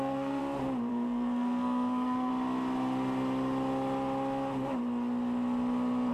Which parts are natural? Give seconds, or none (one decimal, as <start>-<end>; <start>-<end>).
0.4-0.9; 2.3-6.1